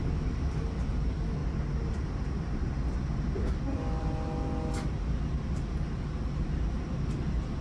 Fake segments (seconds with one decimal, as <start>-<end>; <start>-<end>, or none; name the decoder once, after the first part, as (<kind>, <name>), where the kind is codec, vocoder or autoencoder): none